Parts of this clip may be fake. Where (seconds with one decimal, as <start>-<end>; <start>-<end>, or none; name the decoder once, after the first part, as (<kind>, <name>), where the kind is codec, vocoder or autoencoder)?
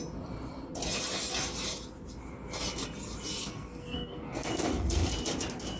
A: 3.4-5.1 (codec, SNAC)